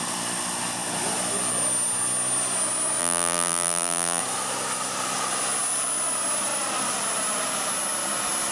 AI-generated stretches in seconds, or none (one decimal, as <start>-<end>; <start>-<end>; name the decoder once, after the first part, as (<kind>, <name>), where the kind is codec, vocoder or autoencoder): 3.0-4.2 (vocoder, BigVGAN v2)

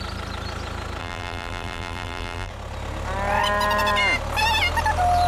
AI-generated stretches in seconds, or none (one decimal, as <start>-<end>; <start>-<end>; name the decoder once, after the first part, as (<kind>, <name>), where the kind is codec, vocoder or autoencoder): 1.0-2.5 (vocoder, BigVGAN v2)

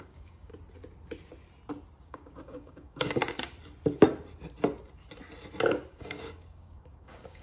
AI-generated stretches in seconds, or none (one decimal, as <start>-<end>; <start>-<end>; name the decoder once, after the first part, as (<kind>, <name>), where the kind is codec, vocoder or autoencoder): 0.0-0.5 (codec, DAC); 2.0-3.2; 5.9-7.4

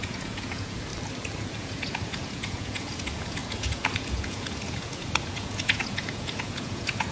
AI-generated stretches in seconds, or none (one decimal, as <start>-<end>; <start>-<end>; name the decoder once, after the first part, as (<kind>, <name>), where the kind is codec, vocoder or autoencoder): 0.0-0.9 (vocoder, Vocos); 1.6-7.1

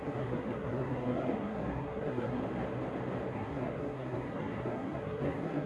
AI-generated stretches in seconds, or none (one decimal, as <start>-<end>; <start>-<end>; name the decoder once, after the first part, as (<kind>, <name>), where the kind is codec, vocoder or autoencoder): 0.0-2.4 (codec, SNAC); 3.3-5.7

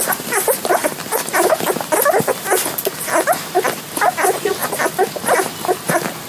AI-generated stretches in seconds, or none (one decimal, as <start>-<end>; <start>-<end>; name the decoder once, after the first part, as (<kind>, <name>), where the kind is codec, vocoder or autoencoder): 0.8-1.6 (vocoder, BigVGAN v2)

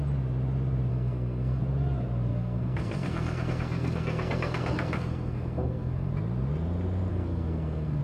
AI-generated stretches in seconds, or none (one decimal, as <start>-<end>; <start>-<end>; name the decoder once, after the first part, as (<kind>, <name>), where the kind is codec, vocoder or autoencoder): 0.9-1.6 (codec, SNAC); 2.3-6.1; 7.1-8.0

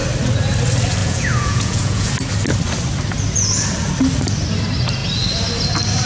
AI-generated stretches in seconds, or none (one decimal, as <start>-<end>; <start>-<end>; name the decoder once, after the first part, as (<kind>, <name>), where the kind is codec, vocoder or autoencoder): 1.0-2.1 (vocoder, Vocos)